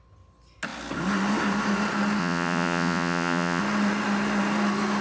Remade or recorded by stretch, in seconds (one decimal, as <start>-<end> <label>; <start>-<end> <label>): 0.0-2.2 recorded; 2.2-3.6 remade; 3.6-5.0 recorded